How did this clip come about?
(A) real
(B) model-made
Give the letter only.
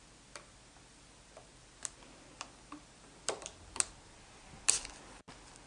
A